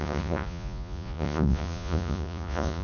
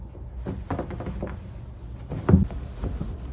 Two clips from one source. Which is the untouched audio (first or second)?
second